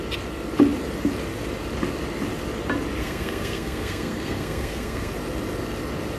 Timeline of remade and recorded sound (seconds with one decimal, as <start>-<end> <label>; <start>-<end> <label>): 0.0-3.0 recorded; 3.0-5.1 remade; 5.1-6.2 recorded